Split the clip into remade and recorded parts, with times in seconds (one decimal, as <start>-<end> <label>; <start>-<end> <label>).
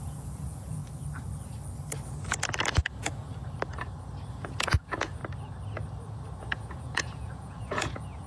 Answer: 0.0-0.8 remade; 0.8-2.7 recorded; 2.7-3.4 remade; 3.4-4.3 recorded; 4.3-5.2 remade; 5.2-6.4 recorded; 6.4-8.3 remade